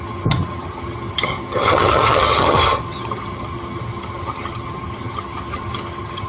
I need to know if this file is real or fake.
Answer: fake